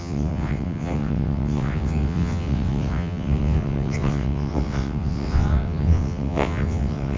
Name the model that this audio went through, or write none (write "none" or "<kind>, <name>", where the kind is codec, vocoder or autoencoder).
vocoder, WaveNeXt